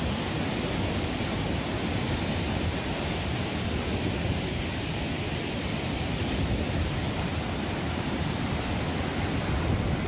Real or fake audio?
fake